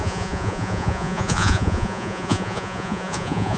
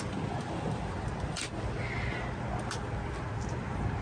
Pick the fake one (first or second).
first